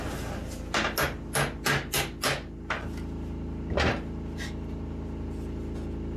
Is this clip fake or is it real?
real